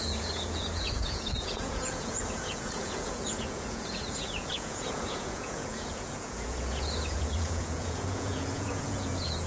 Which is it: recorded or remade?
remade